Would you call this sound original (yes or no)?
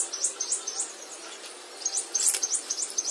yes